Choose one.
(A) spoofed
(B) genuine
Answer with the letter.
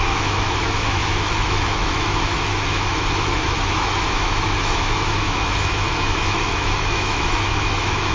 A